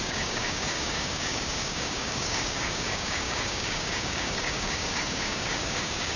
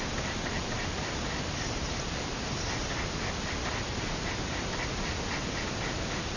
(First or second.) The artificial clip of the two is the first